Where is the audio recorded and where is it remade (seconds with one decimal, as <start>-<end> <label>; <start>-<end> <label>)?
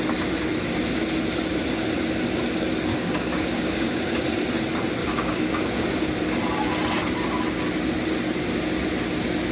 0.0-2.9 recorded; 2.9-4.0 remade; 4.0-5.0 recorded; 5.0-5.9 remade; 5.9-9.5 recorded